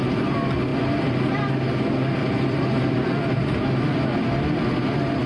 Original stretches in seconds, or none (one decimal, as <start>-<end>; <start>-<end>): 0.0-0.7; 1.5-2.2; 3.1-5.3